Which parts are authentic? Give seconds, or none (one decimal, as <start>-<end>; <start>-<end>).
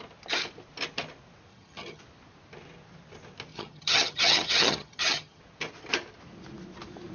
0.0-1.5; 2.0-3.5; 5.4-7.1